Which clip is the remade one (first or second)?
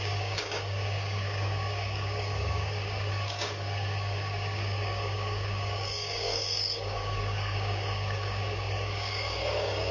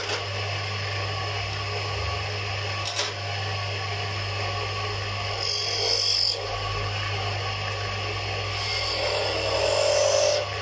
first